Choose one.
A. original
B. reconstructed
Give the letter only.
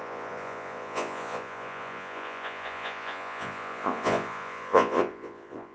B